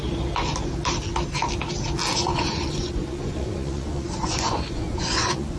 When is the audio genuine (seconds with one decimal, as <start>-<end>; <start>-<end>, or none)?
0.0-2.1